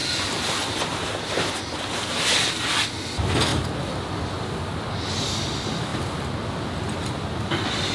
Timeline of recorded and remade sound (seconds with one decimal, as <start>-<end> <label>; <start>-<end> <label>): 0.0-7.9 recorded